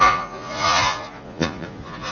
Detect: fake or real fake